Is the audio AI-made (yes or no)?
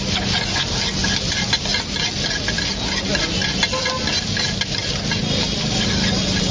no